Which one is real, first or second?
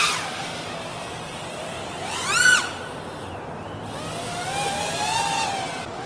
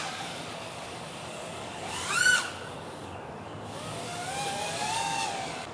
first